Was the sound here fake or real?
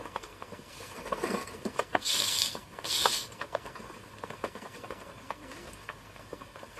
fake